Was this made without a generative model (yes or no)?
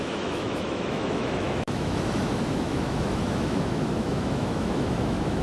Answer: no